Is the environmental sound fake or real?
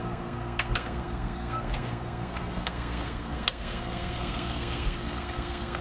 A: fake